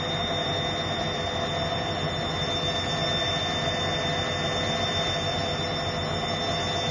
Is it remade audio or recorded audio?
recorded